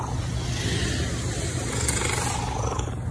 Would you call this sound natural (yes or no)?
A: yes